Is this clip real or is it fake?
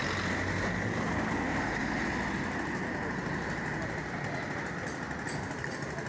real